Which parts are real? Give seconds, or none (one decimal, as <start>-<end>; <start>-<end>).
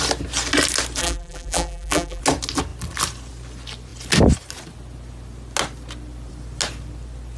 0.0-1.0; 2.2-7.4